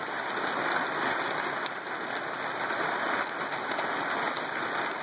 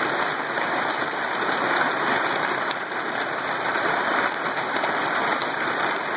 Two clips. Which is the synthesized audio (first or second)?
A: second